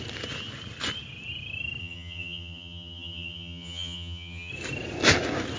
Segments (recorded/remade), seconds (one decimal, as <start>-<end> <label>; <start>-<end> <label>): 0.0-1.8 recorded; 1.8-4.5 remade; 4.5-5.6 recorded

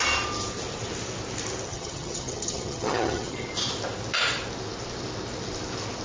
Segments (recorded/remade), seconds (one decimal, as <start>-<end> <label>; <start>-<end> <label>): 0.0-1.7 recorded; 1.7-3.5 remade; 3.5-6.0 recorded

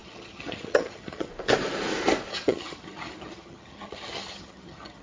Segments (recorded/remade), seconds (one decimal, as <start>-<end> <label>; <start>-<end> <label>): 0.0-1.3 remade; 1.3-2.3 recorded; 2.3-5.0 remade

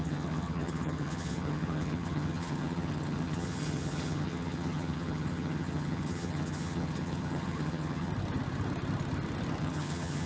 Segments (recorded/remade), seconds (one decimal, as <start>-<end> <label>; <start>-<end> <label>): 0.0-8.1 remade; 8.1-9.6 recorded; 9.6-10.3 remade

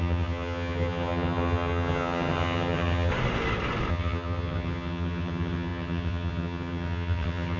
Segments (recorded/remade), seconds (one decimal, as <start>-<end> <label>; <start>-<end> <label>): 0.0-3.1 remade; 3.1-3.9 recorded; 3.9-7.6 remade

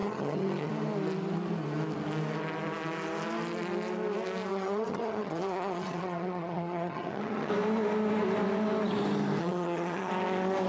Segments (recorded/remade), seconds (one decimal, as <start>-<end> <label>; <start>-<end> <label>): 0.0-0.7 remade; 0.7-4.5 recorded; 4.5-7.5 remade; 7.5-9.4 recorded; 9.4-10.1 remade; 10.1-10.7 recorded